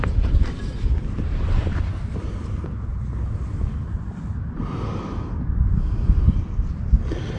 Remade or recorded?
recorded